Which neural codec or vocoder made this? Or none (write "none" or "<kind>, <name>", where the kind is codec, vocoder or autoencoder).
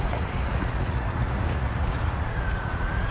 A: vocoder, Vocos